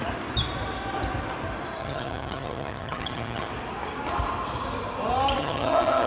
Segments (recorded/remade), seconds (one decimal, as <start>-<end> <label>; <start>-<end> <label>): 0.0-1.8 recorded; 1.8-3.5 remade; 3.5-5.4 recorded; 5.4-6.1 remade